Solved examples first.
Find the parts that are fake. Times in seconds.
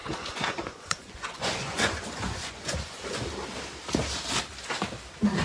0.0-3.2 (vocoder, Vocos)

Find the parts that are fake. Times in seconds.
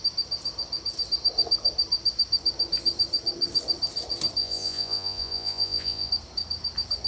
4.4-6.1 (vocoder, Vocos)